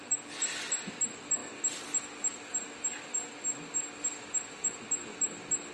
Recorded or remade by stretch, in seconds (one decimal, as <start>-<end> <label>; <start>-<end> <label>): 0.0-5.7 recorded